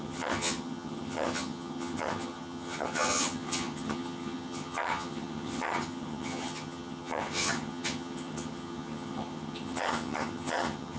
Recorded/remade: remade